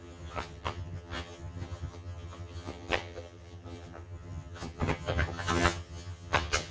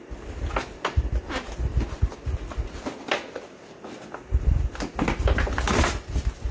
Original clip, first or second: second